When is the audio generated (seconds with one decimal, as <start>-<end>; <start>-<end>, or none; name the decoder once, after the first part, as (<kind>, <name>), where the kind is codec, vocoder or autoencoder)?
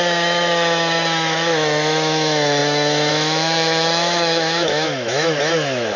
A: 0.0-6.0 (autoencoder, DAC-VAE)